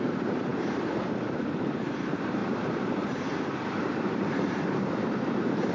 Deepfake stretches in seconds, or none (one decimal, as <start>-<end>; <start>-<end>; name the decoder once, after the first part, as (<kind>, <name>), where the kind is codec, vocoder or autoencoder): 0.0-5.7 (vocoder, BigVGAN v2)